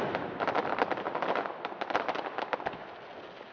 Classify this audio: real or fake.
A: real